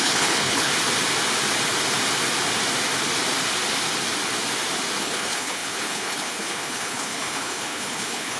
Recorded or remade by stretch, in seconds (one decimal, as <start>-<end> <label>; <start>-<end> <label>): 0.0-0.7 remade; 0.7-5.0 recorded; 5.0-8.4 remade